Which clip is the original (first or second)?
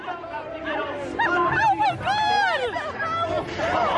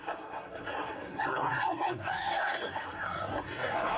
first